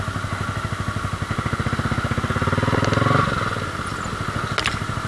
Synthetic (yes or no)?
no